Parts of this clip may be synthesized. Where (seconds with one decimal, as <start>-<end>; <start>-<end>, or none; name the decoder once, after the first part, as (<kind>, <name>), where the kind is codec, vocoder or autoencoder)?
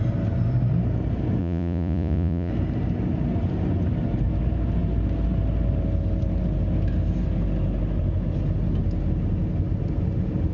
1.4-2.5 (vocoder, Vocos)